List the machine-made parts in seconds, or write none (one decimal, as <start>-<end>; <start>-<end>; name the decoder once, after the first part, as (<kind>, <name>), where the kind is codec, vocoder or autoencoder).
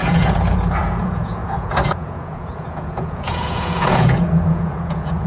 0.0-5.3 (vocoder, Vocos)